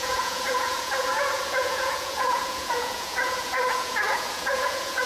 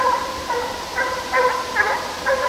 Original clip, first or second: second